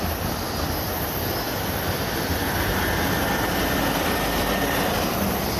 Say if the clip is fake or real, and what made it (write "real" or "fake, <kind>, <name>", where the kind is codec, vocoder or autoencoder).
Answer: real